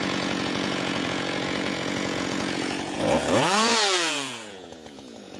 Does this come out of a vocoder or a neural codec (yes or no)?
yes